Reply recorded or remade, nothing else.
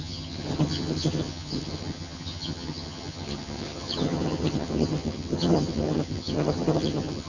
remade